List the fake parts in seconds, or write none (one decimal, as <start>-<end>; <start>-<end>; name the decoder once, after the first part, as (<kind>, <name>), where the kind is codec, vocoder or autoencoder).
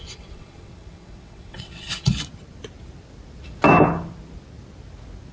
0.0-2.1 (vocoder, WaveNeXt)